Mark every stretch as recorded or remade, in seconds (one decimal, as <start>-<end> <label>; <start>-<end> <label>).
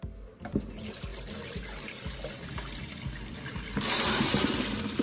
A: 0.0-5.0 recorded